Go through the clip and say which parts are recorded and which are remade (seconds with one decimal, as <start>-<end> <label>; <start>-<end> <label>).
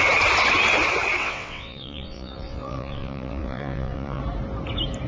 0.0-1.2 recorded; 1.2-4.2 remade; 4.2-5.1 recorded